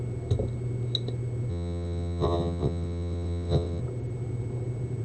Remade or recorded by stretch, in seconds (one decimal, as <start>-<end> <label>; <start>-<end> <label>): 0.0-1.5 recorded; 1.5-3.8 remade; 3.8-5.0 recorded